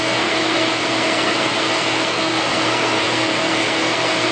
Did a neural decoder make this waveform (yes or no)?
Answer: yes